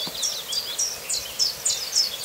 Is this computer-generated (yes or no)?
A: no